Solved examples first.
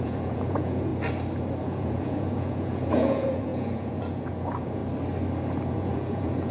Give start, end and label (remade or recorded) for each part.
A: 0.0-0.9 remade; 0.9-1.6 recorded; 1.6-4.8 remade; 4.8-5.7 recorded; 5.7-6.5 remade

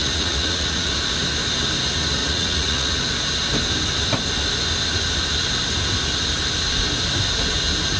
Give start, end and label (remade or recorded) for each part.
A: 0.0-0.9 remade; 0.9-2.2 recorded; 2.2-3.0 remade; 3.0-8.0 recorded

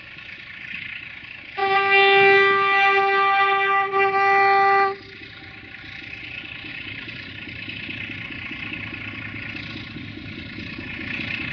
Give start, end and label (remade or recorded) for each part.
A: 0.0-6.7 recorded; 6.7-7.3 remade; 7.3-11.5 recorded

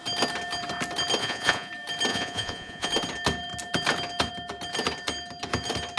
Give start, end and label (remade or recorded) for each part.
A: 0.0-1.2 recorded; 1.2-1.7 remade; 1.7-2.1 recorded; 2.1-2.9 remade; 2.9-6.0 recorded